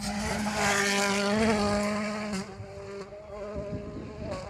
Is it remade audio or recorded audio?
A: recorded